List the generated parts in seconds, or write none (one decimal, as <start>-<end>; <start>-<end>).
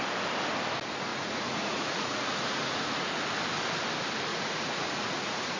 1.1-3.2; 4.3-5.6